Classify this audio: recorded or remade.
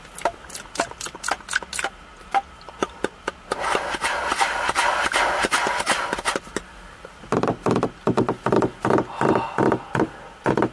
recorded